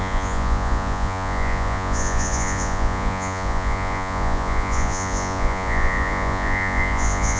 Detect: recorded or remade remade